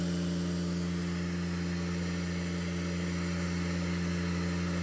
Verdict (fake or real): real